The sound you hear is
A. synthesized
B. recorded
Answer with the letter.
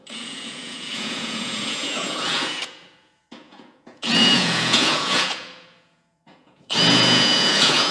A